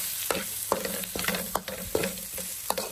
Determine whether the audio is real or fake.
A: real